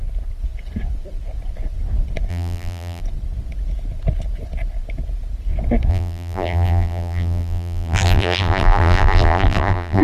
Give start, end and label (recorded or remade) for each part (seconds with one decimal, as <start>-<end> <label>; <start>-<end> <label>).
0.0-2.3 recorded; 2.3-3.0 remade; 3.0-5.9 recorded; 5.9-10.0 remade